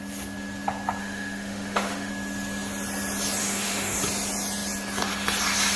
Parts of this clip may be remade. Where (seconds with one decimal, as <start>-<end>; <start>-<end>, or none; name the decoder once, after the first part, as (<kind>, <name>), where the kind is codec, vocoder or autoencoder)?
1.0-2.1 (autoencoder, DAC-VAE); 3.4-4.0